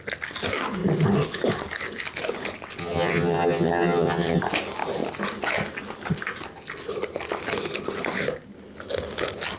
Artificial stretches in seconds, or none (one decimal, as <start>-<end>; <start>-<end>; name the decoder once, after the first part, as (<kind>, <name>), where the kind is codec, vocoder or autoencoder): 2.8-4.4 (vocoder, HiFi-GAN)